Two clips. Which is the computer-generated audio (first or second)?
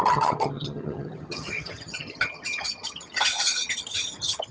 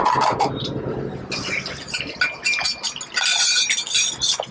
first